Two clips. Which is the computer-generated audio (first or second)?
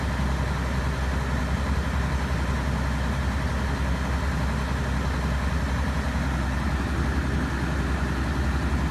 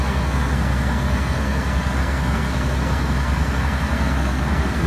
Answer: second